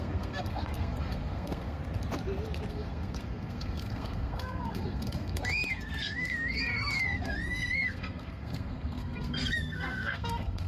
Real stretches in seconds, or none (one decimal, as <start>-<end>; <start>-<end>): 1.8-2.7